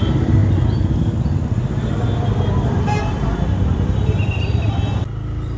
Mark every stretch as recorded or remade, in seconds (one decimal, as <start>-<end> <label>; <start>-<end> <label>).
0.0-5.6 recorded